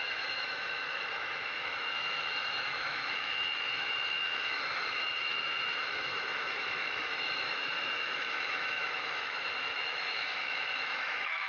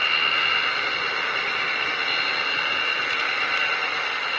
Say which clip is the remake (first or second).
first